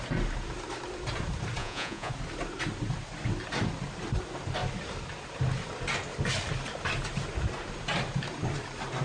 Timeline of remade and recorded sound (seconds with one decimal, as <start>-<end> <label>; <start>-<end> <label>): 0.0-1.6 recorded; 1.6-2.1 remade; 2.1-9.0 recorded